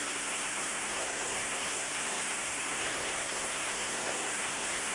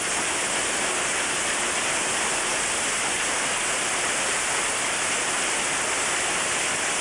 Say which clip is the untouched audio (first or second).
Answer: second